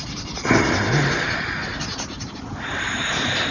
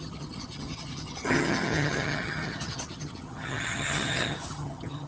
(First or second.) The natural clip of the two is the first